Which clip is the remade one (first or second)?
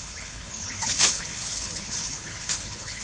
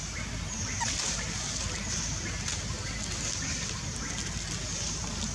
first